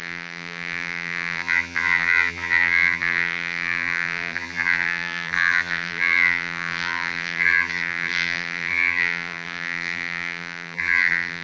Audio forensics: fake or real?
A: fake